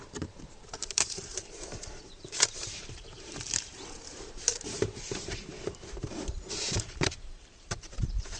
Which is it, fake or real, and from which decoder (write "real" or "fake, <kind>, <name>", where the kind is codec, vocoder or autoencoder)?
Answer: fake, vocoder, BigVGAN v2